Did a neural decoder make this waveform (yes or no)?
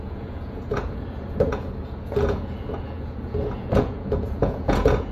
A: yes